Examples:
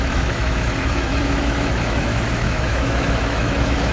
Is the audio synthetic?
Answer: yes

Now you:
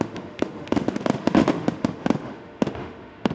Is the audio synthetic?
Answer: yes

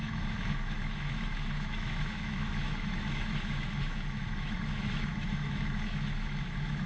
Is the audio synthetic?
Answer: yes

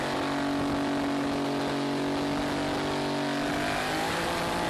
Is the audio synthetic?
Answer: no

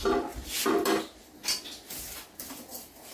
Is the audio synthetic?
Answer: no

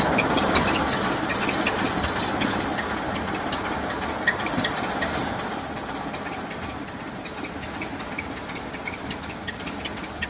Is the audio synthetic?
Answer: no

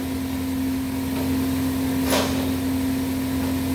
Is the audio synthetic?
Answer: no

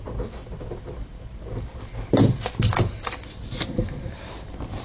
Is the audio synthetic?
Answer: no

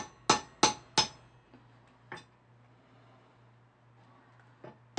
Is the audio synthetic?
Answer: no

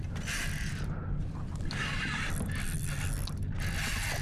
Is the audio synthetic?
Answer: no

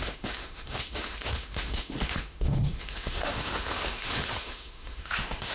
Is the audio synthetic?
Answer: yes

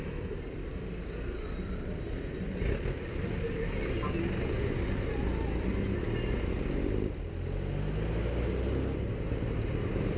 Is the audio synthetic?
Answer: no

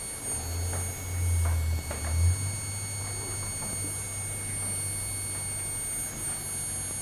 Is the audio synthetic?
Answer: no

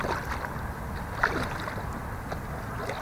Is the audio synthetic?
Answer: no